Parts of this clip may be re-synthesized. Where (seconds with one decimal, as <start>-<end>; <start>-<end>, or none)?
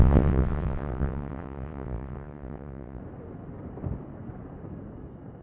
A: 0.0-3.0